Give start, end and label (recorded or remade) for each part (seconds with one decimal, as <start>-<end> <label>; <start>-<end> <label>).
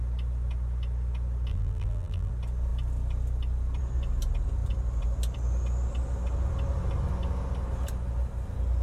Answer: 0.0-1.5 recorded; 1.5-2.3 remade; 2.3-8.8 recorded